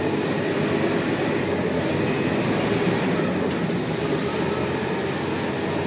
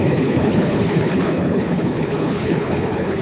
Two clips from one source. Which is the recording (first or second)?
first